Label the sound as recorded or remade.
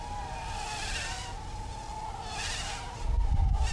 recorded